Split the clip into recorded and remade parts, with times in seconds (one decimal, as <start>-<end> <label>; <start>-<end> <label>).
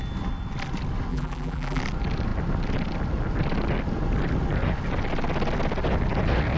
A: 0.0-1.1 recorded; 1.1-1.8 remade; 1.8-6.6 recorded